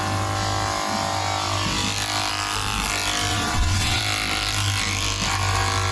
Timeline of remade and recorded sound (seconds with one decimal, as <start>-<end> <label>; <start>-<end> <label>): 0.0-3.3 recorded; 3.3-4.0 remade; 4.0-5.9 recorded